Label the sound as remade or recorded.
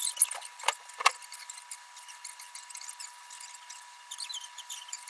recorded